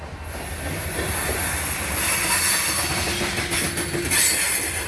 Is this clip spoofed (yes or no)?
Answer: no